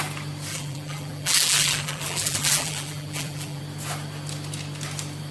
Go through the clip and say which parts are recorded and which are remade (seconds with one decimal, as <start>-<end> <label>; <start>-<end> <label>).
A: 0.0-0.5 recorded; 0.5-3.6 remade; 3.6-5.3 recorded